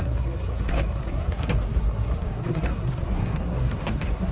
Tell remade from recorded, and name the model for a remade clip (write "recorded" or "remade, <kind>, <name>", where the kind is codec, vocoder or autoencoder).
remade, codec, SNAC